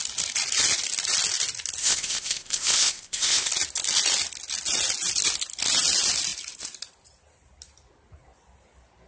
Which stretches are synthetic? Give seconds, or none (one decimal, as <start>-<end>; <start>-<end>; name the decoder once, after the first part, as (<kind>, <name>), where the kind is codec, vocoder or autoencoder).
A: 1.8-3.5 (codec, ZipCodec)